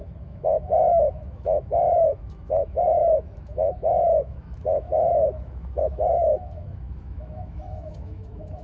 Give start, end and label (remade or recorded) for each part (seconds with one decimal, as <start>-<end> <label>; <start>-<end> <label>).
0.0-8.6 remade